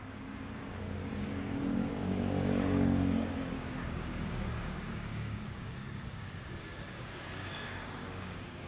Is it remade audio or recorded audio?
remade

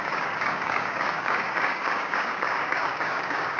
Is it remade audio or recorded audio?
remade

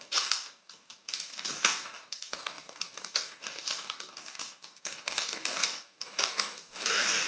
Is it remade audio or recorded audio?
remade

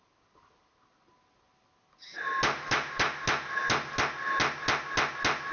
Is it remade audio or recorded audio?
recorded